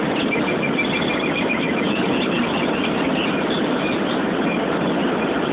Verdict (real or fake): real